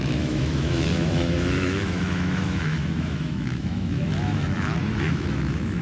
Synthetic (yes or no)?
yes